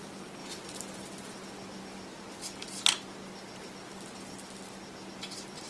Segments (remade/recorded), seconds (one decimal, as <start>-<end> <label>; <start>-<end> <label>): 0.0-5.7 recorded